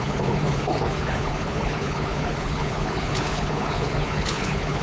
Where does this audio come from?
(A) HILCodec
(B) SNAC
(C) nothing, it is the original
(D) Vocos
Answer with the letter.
A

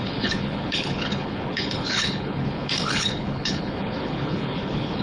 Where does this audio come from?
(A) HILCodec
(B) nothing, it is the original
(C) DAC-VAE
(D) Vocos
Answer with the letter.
A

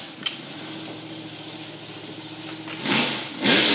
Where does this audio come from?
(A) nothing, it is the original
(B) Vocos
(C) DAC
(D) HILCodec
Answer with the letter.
A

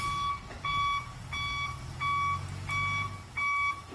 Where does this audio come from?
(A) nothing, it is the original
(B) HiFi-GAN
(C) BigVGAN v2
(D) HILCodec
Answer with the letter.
A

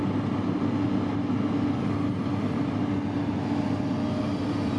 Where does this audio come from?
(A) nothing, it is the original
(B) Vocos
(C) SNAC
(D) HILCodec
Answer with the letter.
A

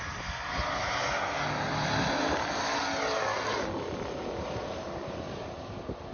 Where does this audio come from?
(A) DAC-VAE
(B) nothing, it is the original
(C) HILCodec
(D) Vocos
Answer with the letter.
B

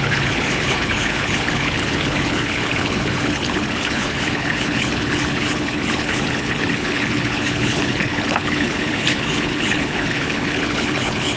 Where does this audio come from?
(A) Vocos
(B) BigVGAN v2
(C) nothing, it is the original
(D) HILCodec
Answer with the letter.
D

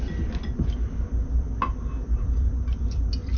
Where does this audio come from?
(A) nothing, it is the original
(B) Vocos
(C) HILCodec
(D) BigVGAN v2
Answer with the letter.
A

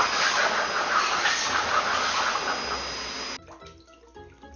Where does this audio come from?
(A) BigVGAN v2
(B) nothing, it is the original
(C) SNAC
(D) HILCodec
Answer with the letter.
B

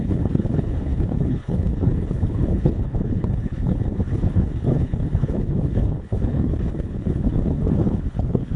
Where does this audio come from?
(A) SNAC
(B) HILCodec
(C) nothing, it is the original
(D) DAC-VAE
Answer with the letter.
B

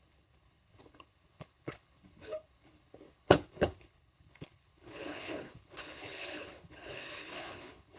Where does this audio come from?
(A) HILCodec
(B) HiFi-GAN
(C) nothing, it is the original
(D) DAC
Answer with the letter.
A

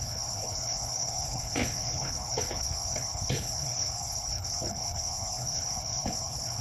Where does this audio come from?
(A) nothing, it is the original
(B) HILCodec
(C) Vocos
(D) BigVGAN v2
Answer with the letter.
B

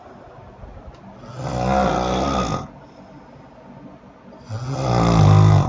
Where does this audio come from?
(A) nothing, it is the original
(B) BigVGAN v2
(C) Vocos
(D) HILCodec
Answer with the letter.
A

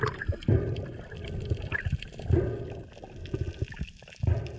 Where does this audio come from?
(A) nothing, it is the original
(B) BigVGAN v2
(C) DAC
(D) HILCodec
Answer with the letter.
A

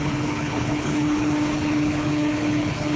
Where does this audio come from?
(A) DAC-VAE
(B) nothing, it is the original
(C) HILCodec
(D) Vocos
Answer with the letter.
C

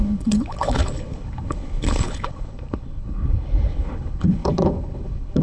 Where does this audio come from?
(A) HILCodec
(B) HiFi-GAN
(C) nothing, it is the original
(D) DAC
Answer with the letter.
A